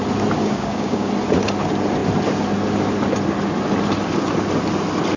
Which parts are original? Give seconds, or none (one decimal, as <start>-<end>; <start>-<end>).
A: 0.0-0.4; 1.1-5.2